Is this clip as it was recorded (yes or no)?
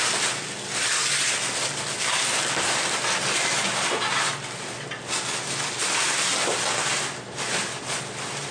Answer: yes